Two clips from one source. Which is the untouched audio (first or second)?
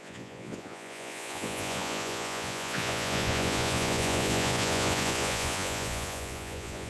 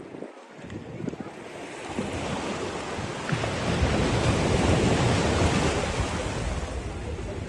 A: second